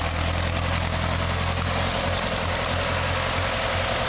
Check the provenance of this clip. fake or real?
real